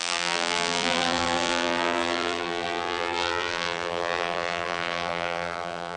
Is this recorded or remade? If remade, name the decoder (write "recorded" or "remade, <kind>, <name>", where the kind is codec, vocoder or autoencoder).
remade, vocoder, BigVGAN v2